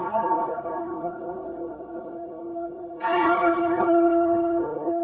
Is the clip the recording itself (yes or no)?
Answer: no